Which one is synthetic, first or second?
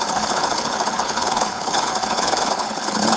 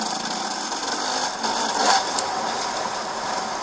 first